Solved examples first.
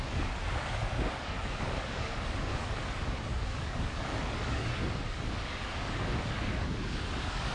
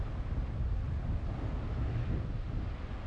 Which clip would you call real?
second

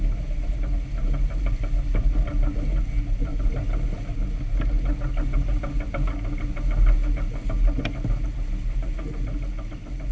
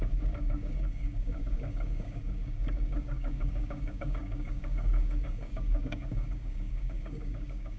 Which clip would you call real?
first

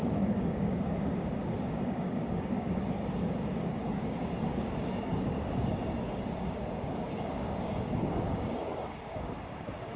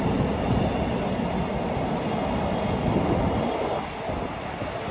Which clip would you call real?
second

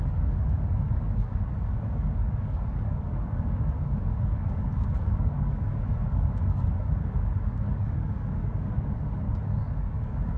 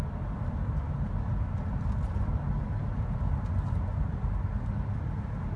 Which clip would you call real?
second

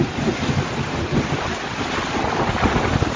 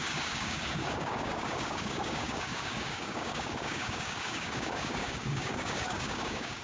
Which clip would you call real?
first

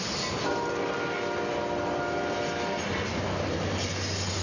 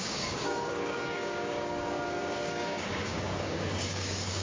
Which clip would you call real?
first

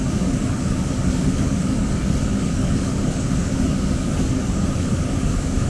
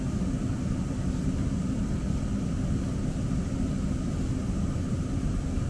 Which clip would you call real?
second